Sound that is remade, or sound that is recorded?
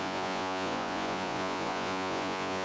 remade